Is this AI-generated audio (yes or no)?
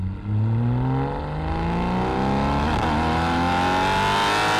no